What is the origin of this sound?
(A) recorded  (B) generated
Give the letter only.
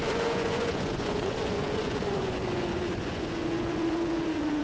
B